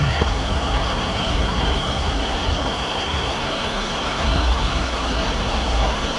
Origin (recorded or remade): remade